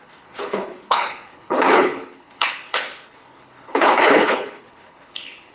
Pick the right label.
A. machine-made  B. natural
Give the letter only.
A